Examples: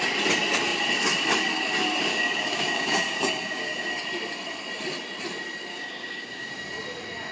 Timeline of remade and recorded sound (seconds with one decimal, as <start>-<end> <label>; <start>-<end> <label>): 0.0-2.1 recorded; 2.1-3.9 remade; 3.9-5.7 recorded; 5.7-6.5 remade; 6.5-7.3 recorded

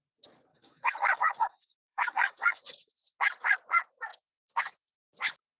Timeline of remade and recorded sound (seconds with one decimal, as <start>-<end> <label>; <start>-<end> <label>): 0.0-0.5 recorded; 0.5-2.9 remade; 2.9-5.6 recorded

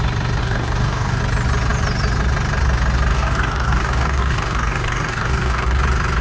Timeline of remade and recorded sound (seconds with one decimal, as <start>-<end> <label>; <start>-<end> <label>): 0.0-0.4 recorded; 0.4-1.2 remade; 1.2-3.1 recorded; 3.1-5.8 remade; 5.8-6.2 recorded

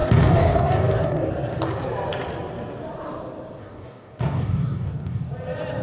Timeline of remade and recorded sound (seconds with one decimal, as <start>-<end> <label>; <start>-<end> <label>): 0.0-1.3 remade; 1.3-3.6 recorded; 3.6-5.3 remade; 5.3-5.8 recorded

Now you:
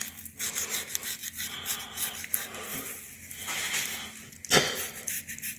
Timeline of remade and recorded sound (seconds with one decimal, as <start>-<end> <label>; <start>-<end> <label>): 0.0-5.6 recorded

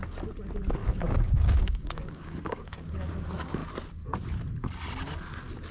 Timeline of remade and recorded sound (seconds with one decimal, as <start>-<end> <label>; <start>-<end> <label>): 0.0-0.8 recorded; 0.8-3.1 remade; 3.1-5.7 recorded

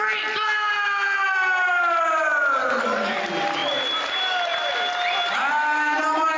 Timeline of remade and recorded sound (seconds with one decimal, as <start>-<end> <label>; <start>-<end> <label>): 0.0-2.6 recorded; 2.6-3.2 remade; 3.2-6.4 recorded

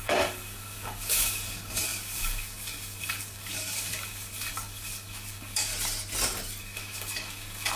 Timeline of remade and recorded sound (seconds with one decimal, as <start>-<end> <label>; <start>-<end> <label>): 0.0-5.7 remade; 5.7-6.6 recorded; 6.6-7.8 remade